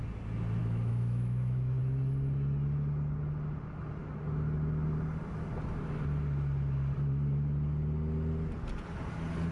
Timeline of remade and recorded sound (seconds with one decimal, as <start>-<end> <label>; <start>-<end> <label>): 0.0-0.6 recorded; 0.6-1.8 remade; 1.8-9.5 recorded